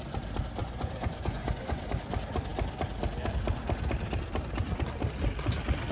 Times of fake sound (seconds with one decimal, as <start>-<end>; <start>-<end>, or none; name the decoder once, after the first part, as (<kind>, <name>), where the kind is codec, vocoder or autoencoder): 0.6-1.8 (vocoder, Vocos)